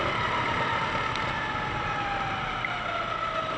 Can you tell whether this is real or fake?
real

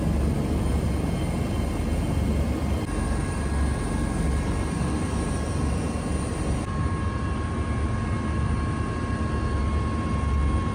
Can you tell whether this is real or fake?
real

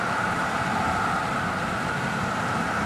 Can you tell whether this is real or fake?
real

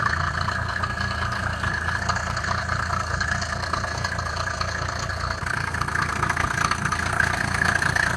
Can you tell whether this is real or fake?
fake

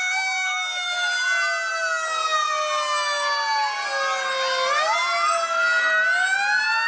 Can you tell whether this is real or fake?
real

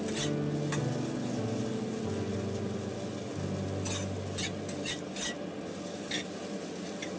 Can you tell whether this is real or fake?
real